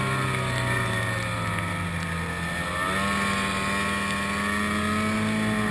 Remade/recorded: recorded